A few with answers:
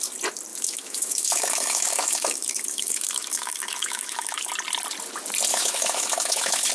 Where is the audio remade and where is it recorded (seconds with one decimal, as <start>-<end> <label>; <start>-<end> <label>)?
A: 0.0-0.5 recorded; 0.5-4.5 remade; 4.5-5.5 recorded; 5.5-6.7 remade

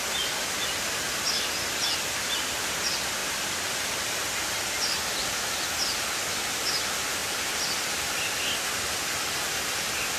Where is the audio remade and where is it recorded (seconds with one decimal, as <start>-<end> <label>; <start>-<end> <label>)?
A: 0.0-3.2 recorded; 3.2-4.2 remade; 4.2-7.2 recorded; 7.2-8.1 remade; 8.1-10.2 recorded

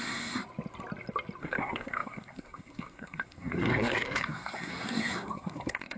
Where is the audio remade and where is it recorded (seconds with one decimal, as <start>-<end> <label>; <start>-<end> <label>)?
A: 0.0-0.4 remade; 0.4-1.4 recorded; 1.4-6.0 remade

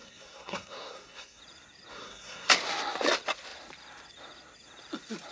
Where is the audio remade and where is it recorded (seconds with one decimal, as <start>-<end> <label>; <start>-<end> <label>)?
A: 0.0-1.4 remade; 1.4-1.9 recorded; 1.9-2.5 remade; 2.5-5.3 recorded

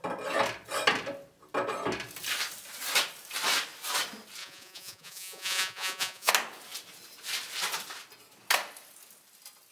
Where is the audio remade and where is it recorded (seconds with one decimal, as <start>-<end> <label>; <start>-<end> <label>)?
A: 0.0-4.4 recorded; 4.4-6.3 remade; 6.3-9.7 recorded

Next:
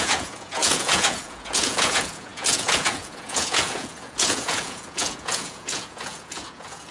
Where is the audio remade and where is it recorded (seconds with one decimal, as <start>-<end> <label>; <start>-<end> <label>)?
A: 0.0-6.9 remade

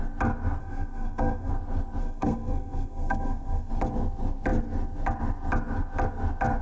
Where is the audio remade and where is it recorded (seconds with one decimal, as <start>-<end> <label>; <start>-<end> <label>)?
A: 0.0-0.6 recorded; 0.6-1.5 remade; 1.5-2.0 recorded; 2.0-3.7 remade; 3.7-6.6 recorded

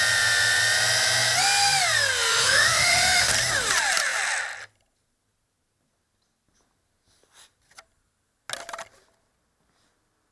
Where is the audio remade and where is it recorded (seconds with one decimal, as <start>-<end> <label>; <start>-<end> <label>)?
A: 0.0-2.3 recorded; 2.3-3.3 remade; 3.3-10.3 recorded